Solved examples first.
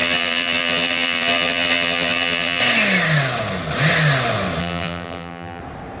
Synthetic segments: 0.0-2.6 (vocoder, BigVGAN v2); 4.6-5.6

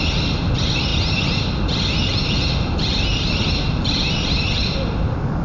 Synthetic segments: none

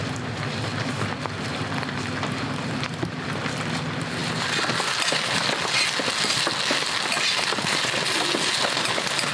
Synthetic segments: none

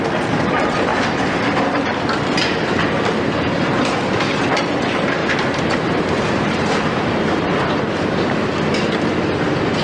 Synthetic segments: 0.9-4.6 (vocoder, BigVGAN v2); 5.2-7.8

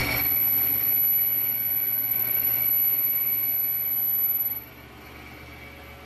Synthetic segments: 2.1-2.7 (vocoder, BigVGAN v2)

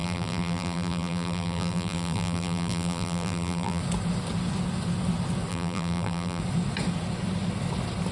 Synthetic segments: 0.0-3.8 (vocoder, BigVGAN v2); 5.5-6.4

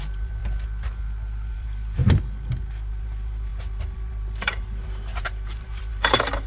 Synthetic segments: 0.0-0.4 (vocoder, BigVGAN v2); 1.5-2.0; 2.9-6.5

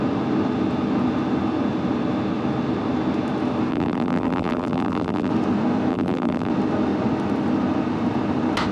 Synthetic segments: 3.7-5.3 (vocoder, BigVGAN v2); 5.9-6.5